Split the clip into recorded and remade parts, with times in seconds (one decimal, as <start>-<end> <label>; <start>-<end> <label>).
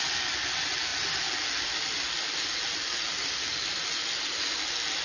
0.0-5.0 recorded